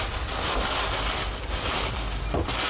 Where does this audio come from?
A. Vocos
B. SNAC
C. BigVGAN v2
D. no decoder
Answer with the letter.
D